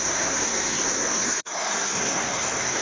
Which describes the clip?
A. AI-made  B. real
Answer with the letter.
A